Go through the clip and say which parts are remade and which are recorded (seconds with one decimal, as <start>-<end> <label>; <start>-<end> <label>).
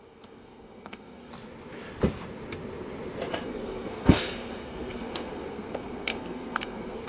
0.0-1.3 remade; 1.3-3.3 recorded; 3.3-7.1 remade